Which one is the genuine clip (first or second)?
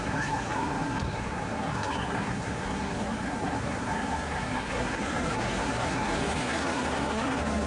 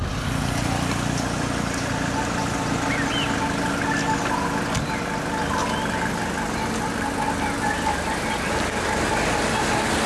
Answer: second